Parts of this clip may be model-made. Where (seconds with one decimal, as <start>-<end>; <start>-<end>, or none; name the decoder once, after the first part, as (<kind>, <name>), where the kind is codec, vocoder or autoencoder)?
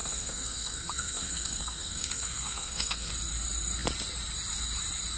0.0-3.1 (codec, SNAC)